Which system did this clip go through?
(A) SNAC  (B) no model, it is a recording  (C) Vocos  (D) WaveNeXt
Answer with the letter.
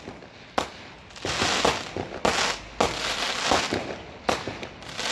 B